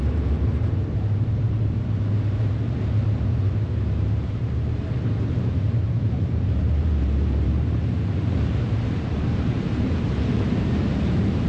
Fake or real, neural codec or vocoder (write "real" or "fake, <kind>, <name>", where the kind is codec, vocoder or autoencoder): fake, vocoder, BigVGAN v2